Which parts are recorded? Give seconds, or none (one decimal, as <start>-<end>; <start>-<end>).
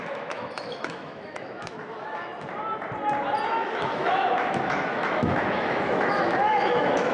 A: 2.3-3.5